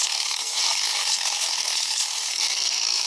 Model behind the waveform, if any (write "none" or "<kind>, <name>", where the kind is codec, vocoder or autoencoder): codec, SNAC